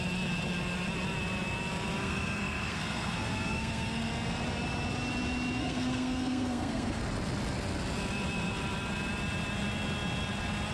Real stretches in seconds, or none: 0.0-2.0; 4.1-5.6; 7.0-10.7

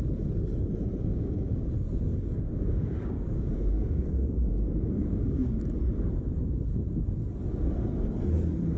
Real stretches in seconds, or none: 0.0-1.1; 1.7-2.1; 5.6-8.8

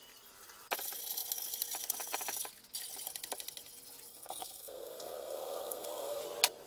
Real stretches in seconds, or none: 0.0-4.1; 6.2-6.7

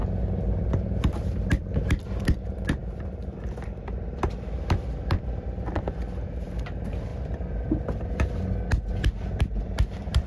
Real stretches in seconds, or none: 0.0-0.6